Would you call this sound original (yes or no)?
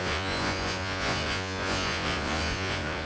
no